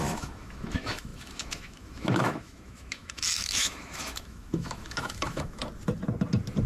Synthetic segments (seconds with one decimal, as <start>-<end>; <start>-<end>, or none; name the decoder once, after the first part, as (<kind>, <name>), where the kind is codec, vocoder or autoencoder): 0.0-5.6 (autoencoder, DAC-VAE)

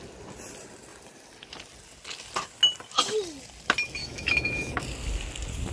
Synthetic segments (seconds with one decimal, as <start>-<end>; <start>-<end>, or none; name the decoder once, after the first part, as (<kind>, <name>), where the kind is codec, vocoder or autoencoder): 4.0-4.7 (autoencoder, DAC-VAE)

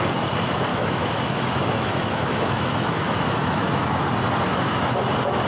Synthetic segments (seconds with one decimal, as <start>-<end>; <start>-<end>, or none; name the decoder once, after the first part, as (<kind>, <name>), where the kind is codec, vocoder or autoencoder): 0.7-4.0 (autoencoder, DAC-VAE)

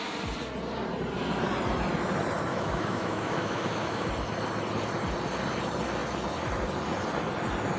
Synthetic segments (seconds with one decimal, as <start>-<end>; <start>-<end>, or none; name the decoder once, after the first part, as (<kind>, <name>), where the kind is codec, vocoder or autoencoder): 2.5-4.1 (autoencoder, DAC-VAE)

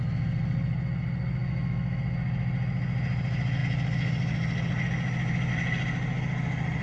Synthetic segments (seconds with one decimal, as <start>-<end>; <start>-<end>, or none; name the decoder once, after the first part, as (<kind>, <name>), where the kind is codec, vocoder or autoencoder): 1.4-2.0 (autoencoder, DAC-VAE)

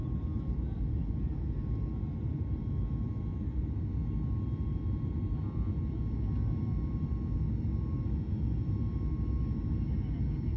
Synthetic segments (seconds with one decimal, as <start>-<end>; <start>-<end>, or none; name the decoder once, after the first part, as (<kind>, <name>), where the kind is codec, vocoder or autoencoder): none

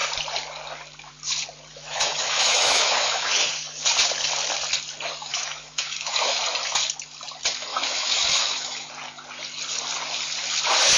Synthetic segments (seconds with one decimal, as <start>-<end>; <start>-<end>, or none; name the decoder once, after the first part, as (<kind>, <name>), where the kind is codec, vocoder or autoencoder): 1.7-3.5 (autoencoder, DAC-VAE); 5.3-6.4; 7.7-8.9